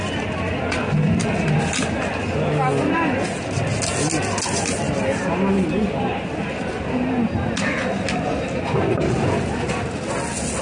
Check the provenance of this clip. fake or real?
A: real